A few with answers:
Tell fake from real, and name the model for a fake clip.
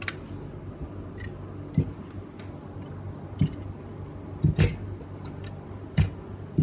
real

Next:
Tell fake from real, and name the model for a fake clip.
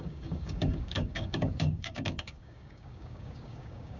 fake, codec, DAC